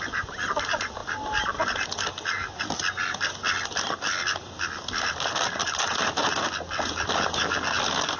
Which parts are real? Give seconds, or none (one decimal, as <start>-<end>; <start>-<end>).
0.0-8.2